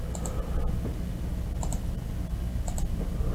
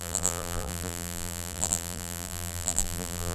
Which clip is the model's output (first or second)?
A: second